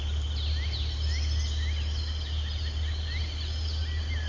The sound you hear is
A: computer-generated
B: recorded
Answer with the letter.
B